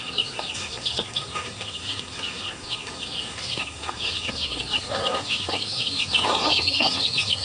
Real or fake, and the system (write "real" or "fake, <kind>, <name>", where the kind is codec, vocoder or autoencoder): fake, codec, SNAC